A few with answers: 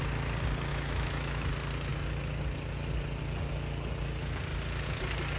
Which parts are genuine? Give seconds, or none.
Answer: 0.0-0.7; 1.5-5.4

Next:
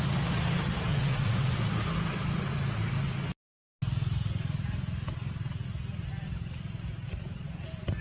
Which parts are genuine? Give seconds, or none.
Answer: 0.0-0.9; 1.6-8.0

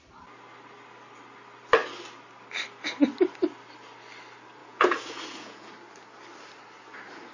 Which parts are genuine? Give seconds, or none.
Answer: 0.0-4.6; 5.7-7.3

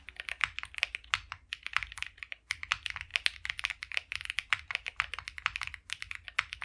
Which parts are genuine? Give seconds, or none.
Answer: 0.0-6.6

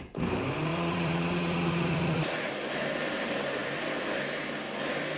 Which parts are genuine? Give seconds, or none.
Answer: 0.0-0.7; 2.5-5.2